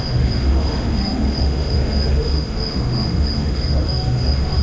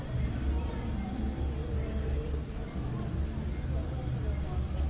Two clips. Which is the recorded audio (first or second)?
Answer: second